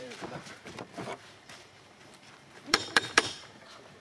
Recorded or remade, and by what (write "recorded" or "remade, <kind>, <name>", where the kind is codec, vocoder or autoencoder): remade, vocoder, BigVGAN v2